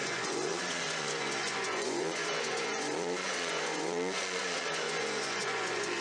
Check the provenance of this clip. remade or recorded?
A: remade